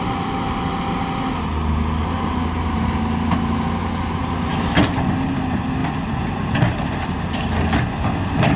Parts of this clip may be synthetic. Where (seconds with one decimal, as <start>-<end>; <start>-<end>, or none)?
none